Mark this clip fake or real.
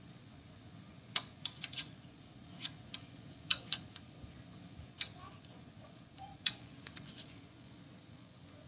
fake